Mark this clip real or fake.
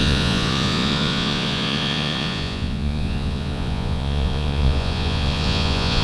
fake